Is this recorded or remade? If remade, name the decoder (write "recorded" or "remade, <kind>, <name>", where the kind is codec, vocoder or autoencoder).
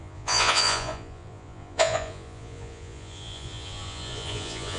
remade, vocoder, Vocos